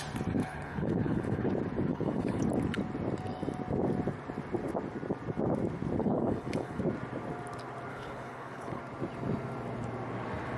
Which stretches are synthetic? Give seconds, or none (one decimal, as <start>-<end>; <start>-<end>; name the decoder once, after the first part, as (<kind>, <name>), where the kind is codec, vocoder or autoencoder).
0.4-1.5 (codec, HILCodec); 1.9-2.4; 6.0-6.8; 7.9-8.8